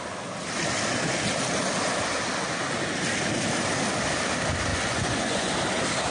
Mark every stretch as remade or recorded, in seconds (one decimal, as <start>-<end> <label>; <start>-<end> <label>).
0.0-4.7 recorded; 4.7-5.5 remade; 5.5-6.1 recorded